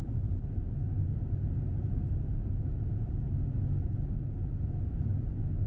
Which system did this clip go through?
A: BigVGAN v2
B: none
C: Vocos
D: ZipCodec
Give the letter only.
B